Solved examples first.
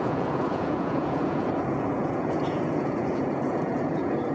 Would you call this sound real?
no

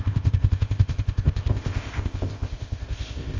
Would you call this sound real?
no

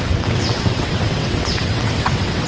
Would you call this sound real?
no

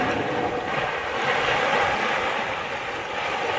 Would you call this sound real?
yes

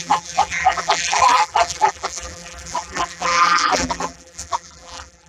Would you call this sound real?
no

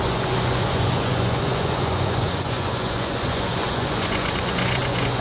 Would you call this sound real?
no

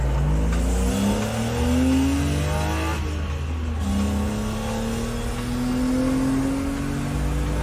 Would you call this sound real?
yes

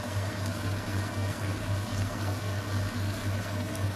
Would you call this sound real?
no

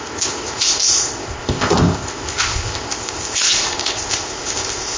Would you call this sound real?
no